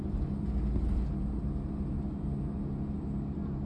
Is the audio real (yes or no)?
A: yes